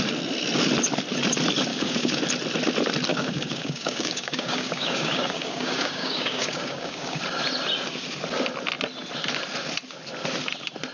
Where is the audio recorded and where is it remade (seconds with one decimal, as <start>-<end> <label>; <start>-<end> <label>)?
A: 0.0-1.7 recorded; 1.7-2.2 remade; 2.2-3.1 recorded; 3.1-7.2 remade; 7.2-10.9 recorded

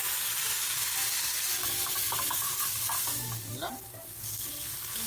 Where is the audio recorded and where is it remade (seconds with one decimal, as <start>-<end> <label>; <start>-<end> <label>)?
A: 0.0-0.4 recorded; 0.4-3.5 remade; 3.5-4.0 recorded; 4.0-5.1 remade

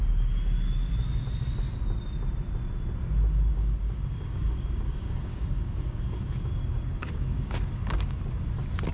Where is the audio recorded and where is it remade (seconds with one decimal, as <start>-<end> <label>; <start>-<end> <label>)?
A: 0.0-3.6 recorded; 3.6-6.6 remade; 6.6-7.0 recorded; 7.0-8.2 remade; 8.2-8.9 recorded

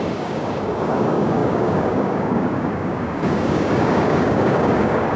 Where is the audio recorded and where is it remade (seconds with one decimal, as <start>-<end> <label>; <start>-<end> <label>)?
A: 0.0-5.2 remade